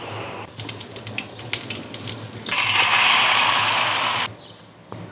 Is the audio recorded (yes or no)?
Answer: yes